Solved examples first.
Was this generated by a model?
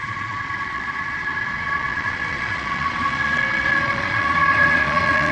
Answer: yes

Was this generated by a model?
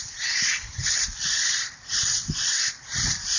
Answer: no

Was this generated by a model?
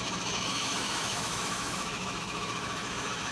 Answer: yes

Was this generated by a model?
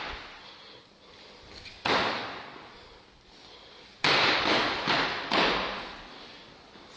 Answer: no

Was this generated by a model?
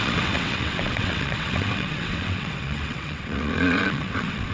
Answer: yes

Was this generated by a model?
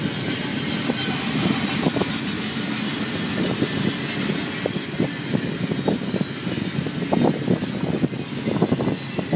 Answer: no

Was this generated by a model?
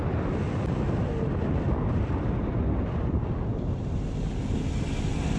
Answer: no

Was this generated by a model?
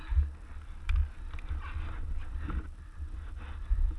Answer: no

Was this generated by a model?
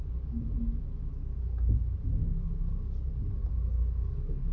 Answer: no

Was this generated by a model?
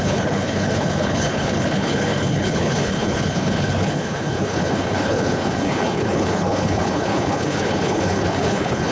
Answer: yes